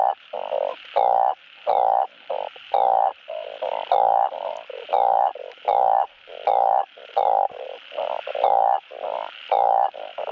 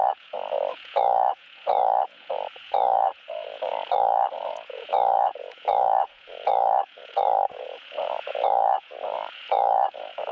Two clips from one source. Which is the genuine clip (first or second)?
first